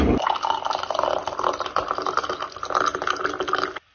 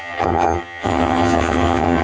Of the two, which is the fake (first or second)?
second